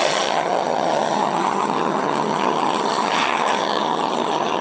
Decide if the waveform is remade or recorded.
remade